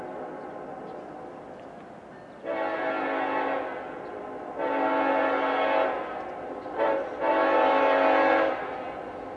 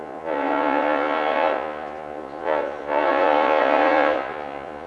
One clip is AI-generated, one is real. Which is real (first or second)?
first